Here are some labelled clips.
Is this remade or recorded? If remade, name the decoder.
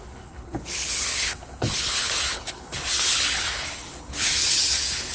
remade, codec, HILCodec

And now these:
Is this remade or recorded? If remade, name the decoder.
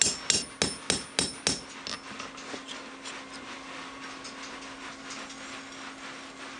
recorded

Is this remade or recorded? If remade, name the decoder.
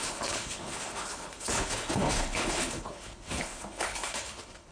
remade, codec, HILCodec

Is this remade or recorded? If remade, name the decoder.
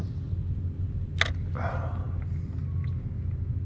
recorded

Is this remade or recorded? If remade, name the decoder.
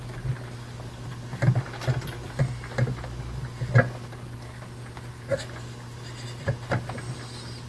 recorded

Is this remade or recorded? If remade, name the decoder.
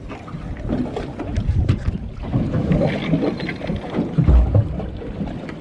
recorded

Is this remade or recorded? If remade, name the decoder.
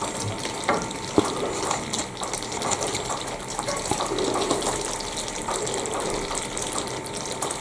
recorded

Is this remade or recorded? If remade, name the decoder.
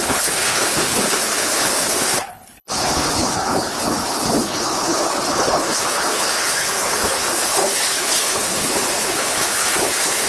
remade, codec, HILCodec